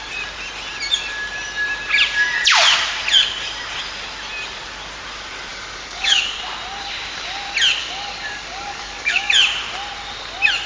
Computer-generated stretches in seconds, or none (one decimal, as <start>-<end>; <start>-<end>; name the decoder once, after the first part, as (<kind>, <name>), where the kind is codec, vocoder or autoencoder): 5.5-6.4 (codec, DAC); 7.8-9.3